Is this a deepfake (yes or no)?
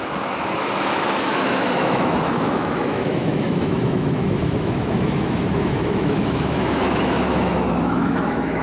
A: yes